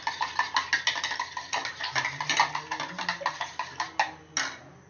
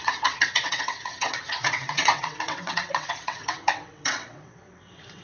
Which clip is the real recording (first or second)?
first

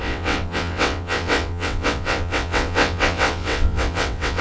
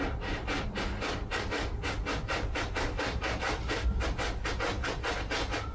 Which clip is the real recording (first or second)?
second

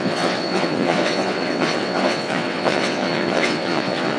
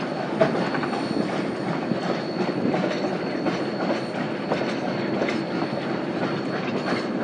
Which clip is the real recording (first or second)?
second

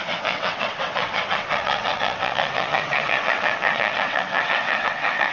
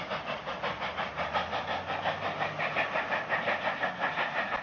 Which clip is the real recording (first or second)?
second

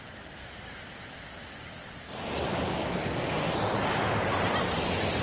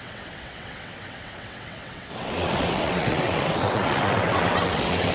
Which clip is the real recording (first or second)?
first